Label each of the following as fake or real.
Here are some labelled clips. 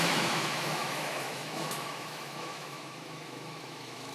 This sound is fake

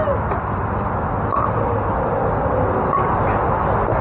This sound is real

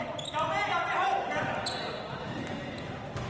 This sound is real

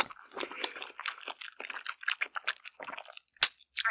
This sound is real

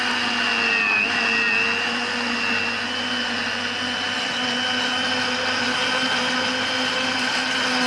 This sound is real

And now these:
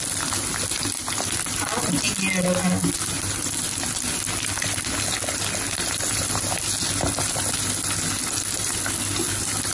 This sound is real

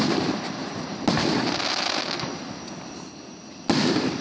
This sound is real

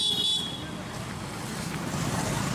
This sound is real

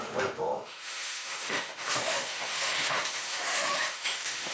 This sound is fake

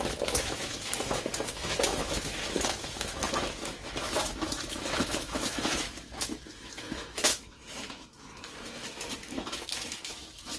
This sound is fake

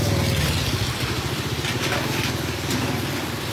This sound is real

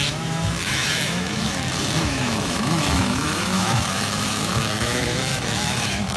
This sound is fake